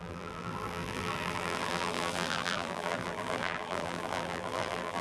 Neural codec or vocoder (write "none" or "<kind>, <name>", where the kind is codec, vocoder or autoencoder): vocoder, BigVGAN v2